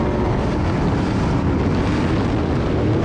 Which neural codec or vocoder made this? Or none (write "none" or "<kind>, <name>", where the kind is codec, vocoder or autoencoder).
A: none